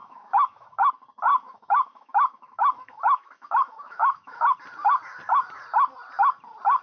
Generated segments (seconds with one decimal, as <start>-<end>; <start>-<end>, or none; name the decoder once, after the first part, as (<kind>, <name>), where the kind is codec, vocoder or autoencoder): 0.0-0.9 (autoencoder, DAC-VAE); 1.3-4.4